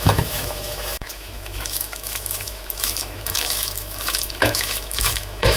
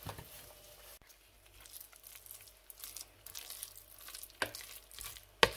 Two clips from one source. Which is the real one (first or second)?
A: second